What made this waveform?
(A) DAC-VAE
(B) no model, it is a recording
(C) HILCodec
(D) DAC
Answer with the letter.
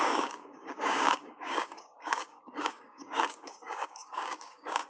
D